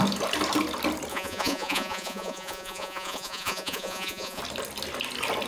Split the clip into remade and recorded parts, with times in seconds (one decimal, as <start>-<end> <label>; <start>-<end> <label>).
0.0-1.1 recorded; 1.1-4.4 remade; 4.4-5.5 recorded